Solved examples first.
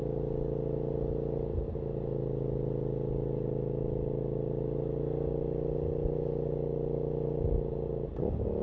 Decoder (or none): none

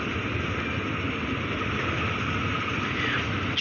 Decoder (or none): none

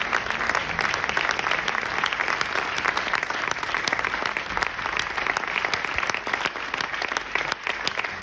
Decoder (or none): none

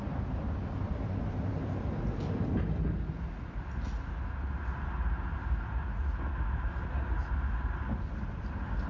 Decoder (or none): none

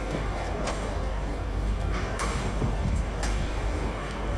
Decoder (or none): codec, DAC